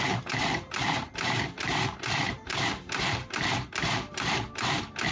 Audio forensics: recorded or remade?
remade